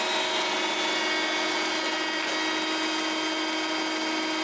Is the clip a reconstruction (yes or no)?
no